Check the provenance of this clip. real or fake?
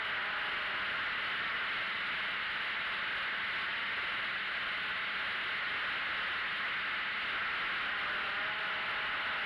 real